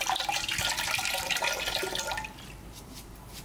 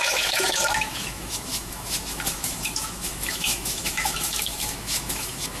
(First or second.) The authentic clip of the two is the first